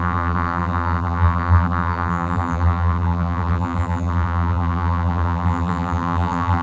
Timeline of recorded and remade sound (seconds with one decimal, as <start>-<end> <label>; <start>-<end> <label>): 0.0-6.6 remade